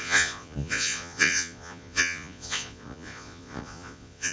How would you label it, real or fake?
fake